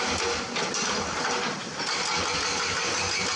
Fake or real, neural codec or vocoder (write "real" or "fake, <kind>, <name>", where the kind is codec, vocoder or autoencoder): real